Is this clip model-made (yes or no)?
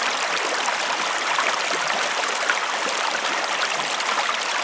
no